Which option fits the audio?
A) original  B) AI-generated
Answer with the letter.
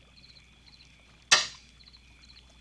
A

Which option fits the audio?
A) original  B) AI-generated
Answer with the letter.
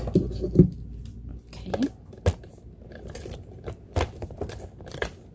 A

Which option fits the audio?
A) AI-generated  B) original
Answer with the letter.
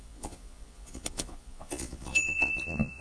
A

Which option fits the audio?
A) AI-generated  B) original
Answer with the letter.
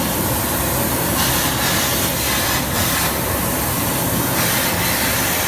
B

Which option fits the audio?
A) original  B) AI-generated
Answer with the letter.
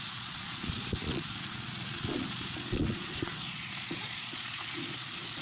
B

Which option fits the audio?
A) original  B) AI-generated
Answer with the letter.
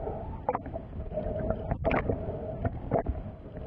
A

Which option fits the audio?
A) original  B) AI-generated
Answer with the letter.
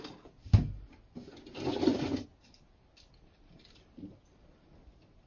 A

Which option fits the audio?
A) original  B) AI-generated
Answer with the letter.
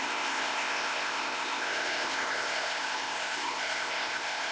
B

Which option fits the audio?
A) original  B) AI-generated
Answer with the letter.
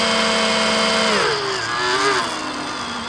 A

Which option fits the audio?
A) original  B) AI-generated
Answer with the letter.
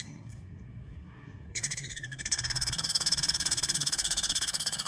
B